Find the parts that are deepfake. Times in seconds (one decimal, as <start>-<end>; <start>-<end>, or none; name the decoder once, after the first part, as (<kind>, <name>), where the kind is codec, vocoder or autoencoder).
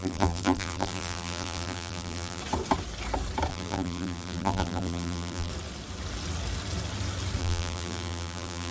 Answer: 0.0-2.4 (vocoder, BigVGAN v2); 3.5-5.5; 7.4-8.7